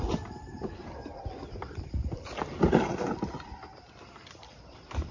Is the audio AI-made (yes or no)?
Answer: yes